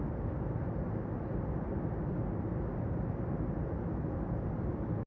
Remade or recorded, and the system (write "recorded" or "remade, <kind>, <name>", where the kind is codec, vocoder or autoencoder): recorded